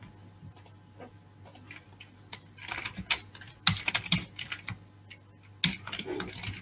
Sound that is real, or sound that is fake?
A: real